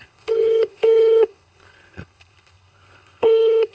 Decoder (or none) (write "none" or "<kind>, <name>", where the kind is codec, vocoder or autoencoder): codec, HILCodec